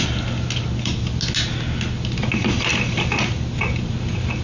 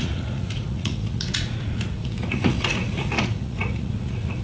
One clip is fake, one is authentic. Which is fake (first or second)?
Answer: second